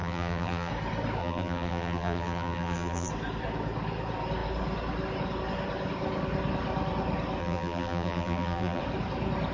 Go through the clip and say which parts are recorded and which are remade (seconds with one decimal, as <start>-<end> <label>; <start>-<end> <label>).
0.0-0.7 remade; 0.7-1.2 recorded; 1.2-3.1 remade; 3.1-7.4 recorded; 7.4-8.8 remade; 8.8-9.5 recorded